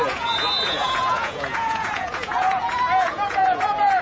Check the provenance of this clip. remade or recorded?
remade